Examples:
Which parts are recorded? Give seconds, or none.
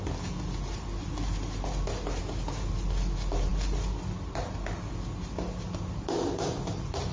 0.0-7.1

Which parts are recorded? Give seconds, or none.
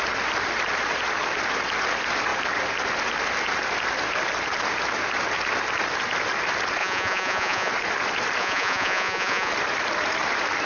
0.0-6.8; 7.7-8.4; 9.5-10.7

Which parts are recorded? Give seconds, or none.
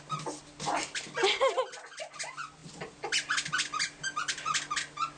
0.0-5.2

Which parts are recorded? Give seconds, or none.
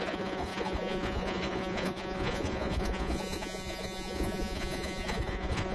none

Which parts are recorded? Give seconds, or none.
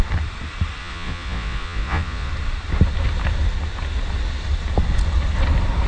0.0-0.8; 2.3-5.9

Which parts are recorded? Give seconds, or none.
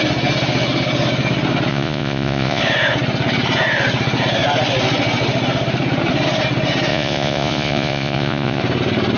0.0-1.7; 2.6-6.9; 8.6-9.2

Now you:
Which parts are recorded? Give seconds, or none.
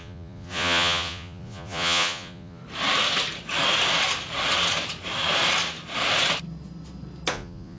2.6-7.3